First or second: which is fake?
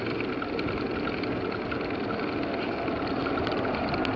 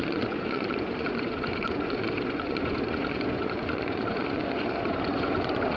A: second